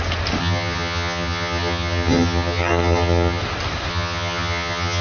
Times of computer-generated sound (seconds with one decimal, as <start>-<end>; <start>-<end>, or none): 0.4-3.4; 3.9-5.0